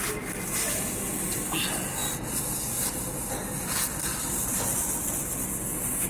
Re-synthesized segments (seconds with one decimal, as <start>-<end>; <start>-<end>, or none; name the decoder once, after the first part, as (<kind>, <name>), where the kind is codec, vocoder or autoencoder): none